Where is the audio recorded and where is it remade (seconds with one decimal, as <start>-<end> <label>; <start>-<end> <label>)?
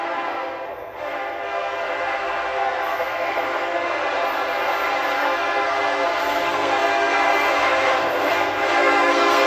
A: 0.0-4.0 remade; 4.0-5.2 recorded; 5.2-9.5 remade